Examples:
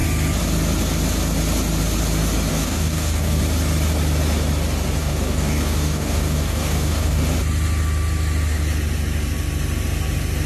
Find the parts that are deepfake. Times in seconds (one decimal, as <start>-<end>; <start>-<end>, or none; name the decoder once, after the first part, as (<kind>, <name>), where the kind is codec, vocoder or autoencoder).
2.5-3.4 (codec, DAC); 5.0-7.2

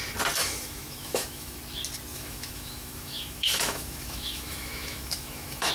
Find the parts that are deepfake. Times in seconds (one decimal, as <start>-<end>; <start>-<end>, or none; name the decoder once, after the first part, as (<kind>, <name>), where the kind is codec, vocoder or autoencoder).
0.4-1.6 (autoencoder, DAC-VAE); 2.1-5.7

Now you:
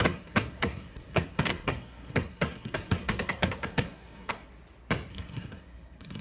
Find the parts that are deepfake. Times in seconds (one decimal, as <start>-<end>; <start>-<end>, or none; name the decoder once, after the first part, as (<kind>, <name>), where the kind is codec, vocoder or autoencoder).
0.0-4.5 (codec, SNAC); 5.1-6.2

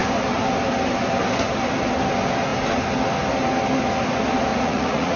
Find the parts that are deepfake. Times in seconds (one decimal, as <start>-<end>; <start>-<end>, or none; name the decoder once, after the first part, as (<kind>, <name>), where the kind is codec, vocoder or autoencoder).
4.5-5.2 (vocoder, Vocos)